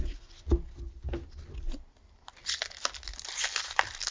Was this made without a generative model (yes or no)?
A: yes